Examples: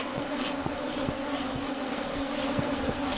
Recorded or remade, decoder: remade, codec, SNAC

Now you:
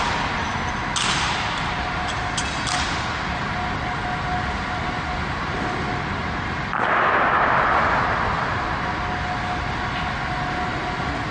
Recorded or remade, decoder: recorded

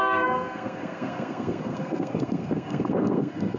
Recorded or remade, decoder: remade, codec, SNAC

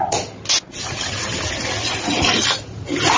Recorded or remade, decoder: recorded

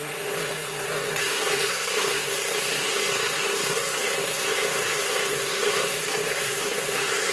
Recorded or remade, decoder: remade, codec, SNAC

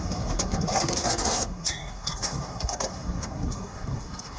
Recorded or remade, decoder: remade, codec, SNAC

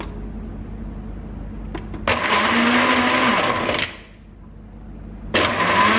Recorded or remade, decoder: recorded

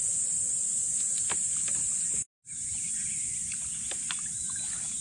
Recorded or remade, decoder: recorded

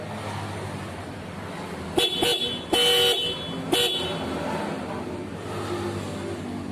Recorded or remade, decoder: recorded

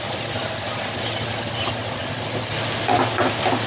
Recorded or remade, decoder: recorded